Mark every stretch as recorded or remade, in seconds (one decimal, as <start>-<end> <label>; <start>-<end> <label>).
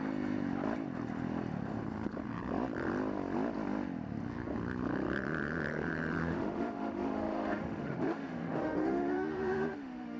0.0-6.2 recorded; 6.2-10.2 remade